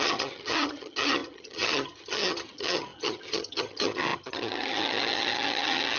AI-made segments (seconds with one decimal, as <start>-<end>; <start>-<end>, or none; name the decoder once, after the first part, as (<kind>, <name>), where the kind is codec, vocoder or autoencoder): 0.0-6.0 (vocoder, HiFi-GAN)